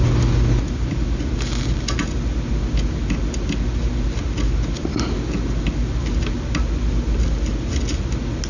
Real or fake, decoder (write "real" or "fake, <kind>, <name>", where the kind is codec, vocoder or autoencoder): real